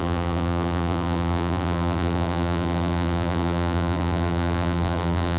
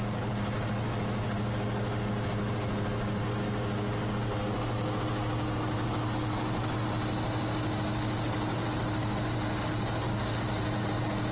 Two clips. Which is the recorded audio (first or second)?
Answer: second